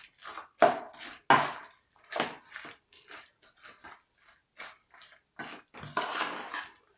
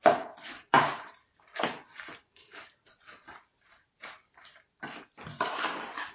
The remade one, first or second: second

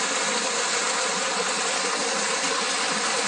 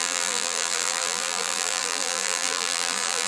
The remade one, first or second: second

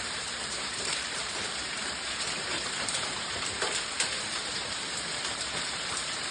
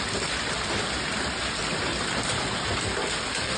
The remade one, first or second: first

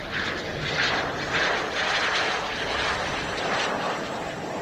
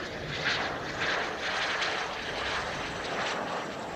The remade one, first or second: first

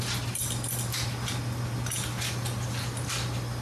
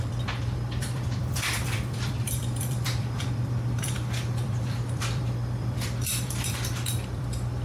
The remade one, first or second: second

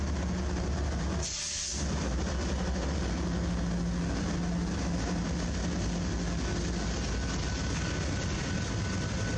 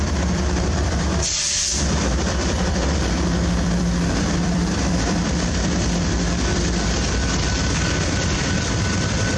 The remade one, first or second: second